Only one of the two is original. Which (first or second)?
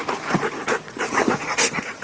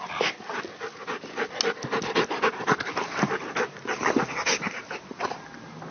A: second